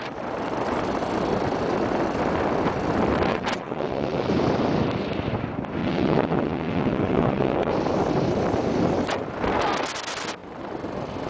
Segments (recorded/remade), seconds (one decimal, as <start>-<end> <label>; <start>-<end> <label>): 0.0-3.3 recorded; 3.3-4.3 remade; 4.3-5.8 recorded; 5.8-7.7 remade; 7.7-11.3 recorded